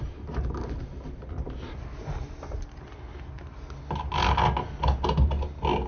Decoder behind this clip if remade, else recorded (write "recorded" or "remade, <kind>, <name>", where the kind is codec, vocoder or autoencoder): recorded